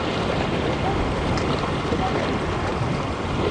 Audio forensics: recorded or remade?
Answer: recorded